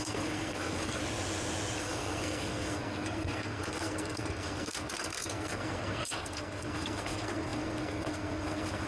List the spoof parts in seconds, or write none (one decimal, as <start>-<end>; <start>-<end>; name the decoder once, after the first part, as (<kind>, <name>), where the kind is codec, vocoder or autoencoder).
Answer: 0.0-1.0 (codec, SNAC); 1.8-8.9